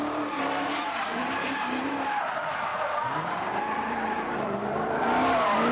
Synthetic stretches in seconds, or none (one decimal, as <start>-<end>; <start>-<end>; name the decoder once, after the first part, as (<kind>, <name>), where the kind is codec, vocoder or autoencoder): 1.2-1.9 (vocoder, BigVGAN v2); 2.7-5.0